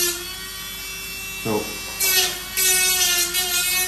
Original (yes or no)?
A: yes